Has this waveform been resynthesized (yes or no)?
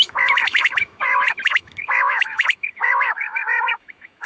yes